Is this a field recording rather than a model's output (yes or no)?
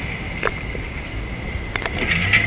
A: yes